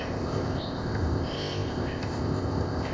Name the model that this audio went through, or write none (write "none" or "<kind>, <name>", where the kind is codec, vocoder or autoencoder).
codec, ZipCodec